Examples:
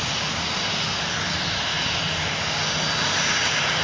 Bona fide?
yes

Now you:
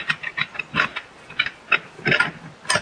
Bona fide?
yes